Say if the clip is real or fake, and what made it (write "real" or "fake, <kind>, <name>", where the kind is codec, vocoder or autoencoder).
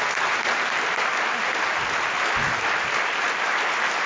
real